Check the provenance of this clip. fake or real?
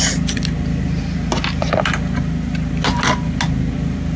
real